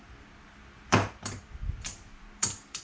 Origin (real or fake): fake